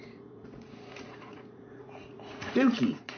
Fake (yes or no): yes